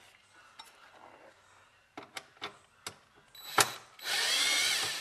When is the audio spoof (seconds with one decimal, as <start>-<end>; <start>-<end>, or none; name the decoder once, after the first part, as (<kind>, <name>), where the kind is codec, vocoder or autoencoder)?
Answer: none